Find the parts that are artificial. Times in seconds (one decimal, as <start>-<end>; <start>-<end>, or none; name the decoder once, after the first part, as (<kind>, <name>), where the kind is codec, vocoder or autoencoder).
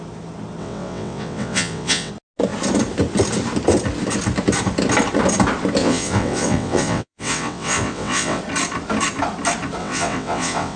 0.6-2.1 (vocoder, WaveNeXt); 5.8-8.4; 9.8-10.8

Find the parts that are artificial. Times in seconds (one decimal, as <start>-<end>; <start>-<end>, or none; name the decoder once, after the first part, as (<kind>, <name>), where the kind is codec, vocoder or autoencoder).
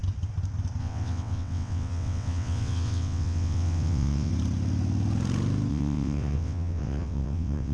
0.8-4.3 (vocoder, WaveNeXt); 5.7-7.7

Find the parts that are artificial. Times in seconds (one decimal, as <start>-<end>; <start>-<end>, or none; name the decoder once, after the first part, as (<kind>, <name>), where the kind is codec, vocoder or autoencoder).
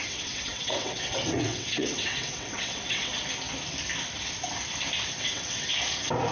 0.0-3.1 (vocoder, WaveNeXt); 5.2-5.7